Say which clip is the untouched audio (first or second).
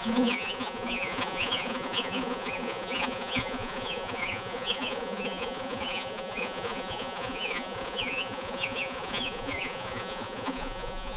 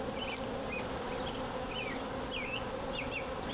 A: second